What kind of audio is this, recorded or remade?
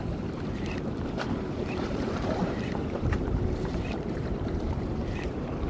remade